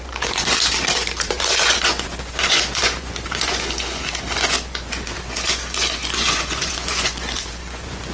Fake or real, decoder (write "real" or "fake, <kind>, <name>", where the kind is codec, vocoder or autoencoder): fake, vocoder, Vocos